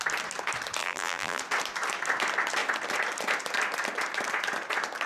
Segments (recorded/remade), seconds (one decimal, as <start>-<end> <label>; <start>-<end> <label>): 0.0-0.8 recorded; 0.8-1.4 remade; 1.4-5.1 recorded